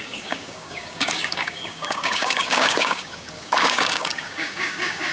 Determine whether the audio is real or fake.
fake